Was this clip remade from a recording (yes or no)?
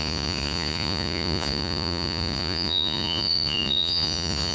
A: yes